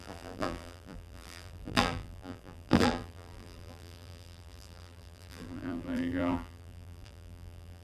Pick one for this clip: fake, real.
fake